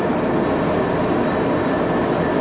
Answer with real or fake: real